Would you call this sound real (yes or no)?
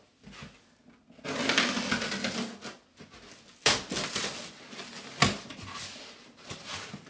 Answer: yes